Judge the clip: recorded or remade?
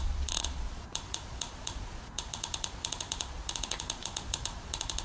remade